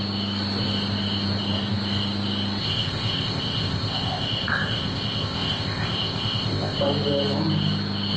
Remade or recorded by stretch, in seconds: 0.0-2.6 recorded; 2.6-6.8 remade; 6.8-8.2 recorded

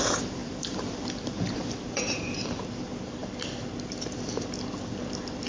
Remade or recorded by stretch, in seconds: 0.0-3.2 remade; 3.2-5.5 recorded

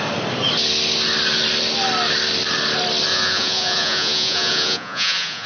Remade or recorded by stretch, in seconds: 0.0-3.1 recorded; 3.1-5.5 remade